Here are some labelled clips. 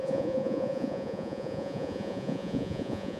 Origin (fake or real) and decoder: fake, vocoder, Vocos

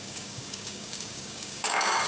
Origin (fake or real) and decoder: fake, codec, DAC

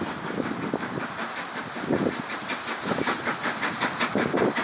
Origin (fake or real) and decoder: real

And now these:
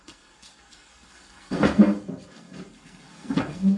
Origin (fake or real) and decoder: fake, codec, SNAC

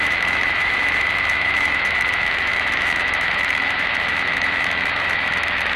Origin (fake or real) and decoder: fake, autoencoder, DAC-VAE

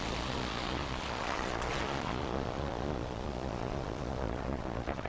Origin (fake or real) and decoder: fake, vocoder, Vocos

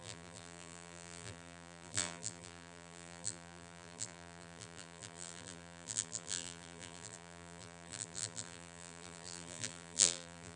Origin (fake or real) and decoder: fake, vocoder, BigVGAN v2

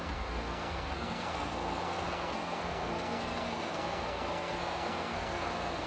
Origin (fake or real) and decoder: fake, codec, SNAC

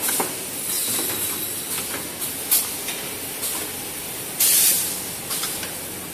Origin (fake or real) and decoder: real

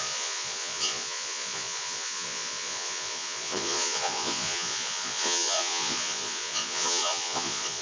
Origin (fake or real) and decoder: fake, vocoder, Vocos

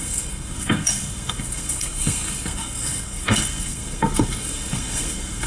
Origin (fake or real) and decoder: fake, codec, SNAC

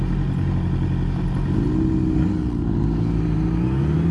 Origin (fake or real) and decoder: real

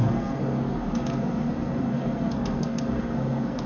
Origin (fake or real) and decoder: fake, codec, SNAC